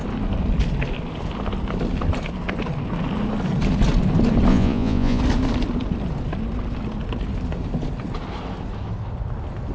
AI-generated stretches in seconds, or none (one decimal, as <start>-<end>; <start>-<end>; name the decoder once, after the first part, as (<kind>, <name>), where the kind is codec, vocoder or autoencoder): 4.5-5.2 (vocoder, Vocos)